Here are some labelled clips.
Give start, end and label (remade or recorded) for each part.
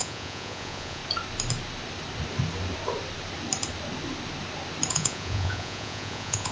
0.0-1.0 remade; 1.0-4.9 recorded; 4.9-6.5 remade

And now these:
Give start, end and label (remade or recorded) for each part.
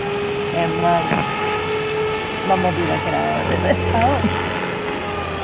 0.0-5.4 recorded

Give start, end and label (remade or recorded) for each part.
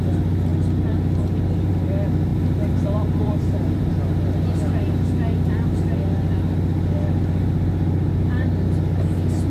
0.0-2.3 recorded; 2.3-3.9 remade; 3.9-9.5 recorded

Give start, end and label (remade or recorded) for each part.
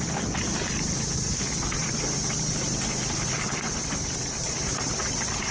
0.0-5.5 recorded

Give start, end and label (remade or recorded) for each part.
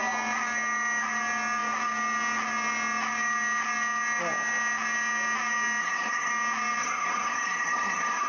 0.0-5.8 recorded; 5.8-6.3 remade; 6.3-6.8 recorded; 6.8-8.3 remade